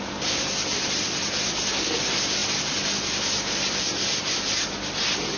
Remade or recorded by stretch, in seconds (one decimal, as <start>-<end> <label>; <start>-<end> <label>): 0.0-5.4 recorded